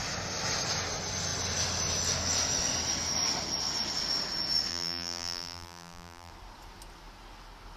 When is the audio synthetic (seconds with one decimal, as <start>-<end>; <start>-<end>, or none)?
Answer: 4.7-6.3